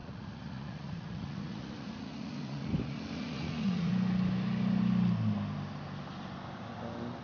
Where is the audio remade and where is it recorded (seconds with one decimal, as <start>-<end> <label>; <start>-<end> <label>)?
0.0-3.9 remade; 3.9-7.2 recorded